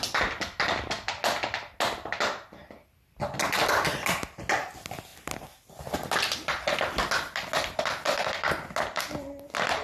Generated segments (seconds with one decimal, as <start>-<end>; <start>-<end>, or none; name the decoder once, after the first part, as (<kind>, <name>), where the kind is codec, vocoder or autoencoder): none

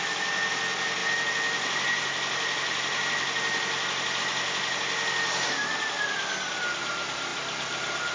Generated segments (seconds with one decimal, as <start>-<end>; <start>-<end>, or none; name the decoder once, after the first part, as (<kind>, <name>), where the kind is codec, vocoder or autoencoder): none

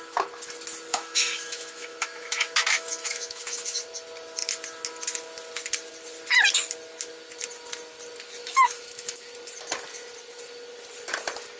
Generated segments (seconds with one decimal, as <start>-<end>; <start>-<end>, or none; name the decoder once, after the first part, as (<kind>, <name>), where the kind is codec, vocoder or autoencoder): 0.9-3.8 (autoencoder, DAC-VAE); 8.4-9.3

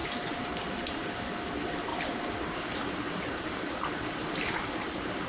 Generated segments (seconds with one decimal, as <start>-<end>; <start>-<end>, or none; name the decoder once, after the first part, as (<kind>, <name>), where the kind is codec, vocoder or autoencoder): 0.0-1.2 (vocoder, BigVGAN v2); 1.9-5.3

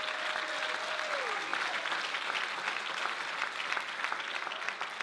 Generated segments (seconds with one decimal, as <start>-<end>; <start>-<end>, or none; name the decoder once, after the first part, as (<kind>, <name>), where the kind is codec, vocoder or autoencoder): none